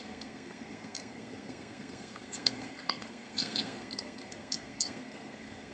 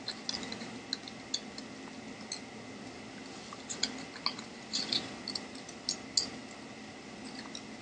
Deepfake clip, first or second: first